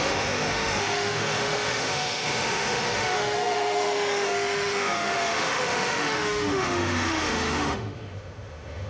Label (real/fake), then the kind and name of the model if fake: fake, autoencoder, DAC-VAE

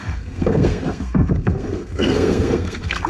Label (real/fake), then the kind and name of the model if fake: fake, codec, SNAC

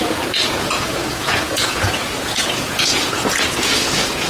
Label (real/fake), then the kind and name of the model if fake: fake, vocoder, Vocos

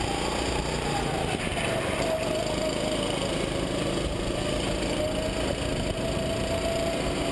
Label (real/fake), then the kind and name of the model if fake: real